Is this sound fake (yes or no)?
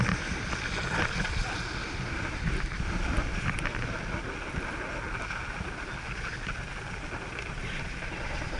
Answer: no